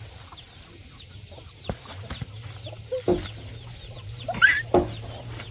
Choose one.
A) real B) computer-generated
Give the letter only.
A